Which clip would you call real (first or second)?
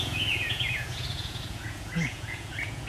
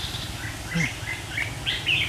second